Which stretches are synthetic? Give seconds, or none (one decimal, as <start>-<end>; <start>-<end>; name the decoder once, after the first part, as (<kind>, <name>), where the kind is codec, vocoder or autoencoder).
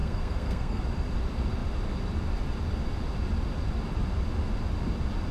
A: 0.0-0.8 (codec, SNAC)